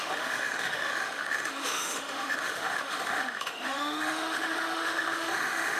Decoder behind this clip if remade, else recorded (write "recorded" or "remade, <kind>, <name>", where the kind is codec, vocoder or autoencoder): remade, autoencoder, DAC-VAE